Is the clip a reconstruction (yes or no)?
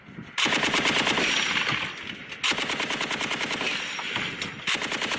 no